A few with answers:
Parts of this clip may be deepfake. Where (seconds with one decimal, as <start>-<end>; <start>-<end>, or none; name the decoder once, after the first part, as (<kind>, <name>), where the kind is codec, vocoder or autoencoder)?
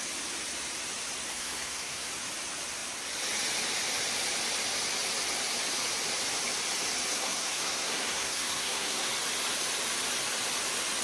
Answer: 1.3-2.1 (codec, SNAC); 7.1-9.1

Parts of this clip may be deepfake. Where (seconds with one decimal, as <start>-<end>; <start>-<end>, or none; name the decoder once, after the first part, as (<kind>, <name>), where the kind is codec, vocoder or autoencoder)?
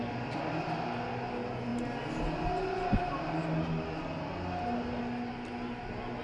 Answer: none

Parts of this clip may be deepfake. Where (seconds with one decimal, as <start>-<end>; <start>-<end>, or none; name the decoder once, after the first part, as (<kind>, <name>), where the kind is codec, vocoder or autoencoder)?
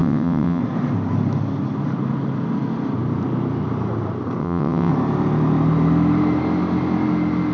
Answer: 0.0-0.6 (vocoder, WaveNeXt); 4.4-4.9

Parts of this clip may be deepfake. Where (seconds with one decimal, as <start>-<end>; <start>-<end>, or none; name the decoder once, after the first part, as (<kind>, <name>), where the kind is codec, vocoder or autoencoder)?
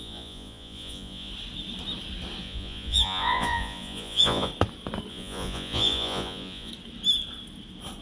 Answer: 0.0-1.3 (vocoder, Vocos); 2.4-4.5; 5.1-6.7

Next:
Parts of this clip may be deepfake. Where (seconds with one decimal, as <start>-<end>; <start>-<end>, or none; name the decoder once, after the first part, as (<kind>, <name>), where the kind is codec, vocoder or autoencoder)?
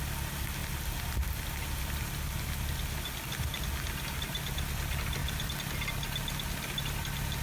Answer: none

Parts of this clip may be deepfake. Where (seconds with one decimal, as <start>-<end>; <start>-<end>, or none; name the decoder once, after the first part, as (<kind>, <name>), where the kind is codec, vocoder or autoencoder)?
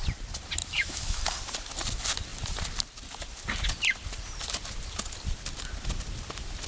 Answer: 0.6-1.2 (autoencoder, DAC-VAE)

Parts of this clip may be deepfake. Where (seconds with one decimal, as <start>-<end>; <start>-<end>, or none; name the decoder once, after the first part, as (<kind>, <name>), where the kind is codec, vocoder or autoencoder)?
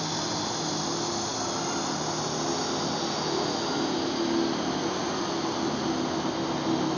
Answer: none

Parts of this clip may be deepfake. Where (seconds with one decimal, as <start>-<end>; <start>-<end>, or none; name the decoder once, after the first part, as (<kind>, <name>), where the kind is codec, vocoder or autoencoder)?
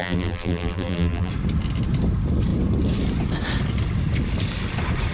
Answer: 0.0-1.3 (vocoder, BigVGAN v2)